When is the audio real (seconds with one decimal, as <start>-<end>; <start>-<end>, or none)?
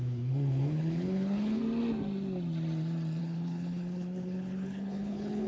1.6-3.2